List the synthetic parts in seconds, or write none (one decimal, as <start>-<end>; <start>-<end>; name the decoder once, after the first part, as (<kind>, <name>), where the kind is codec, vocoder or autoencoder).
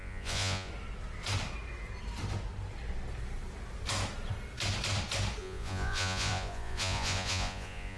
0.0-0.7 (vocoder, Vocos); 5.4-8.0